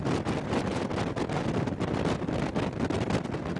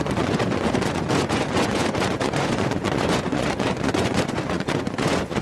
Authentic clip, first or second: first